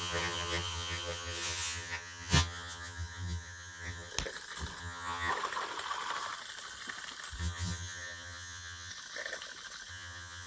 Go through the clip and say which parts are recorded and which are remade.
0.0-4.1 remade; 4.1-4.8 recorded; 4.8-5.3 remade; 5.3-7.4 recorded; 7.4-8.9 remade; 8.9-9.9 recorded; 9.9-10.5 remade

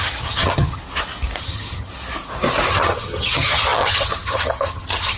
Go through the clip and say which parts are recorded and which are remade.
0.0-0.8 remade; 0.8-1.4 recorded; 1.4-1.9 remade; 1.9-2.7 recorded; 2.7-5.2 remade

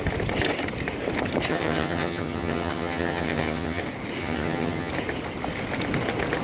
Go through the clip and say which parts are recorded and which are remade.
0.0-1.5 recorded; 1.5-3.8 remade; 3.8-4.2 recorded; 4.2-4.9 remade; 4.9-6.4 recorded